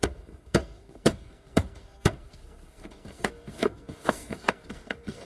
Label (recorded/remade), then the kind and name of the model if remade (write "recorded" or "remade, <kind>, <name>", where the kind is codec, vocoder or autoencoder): remade, codec, SNAC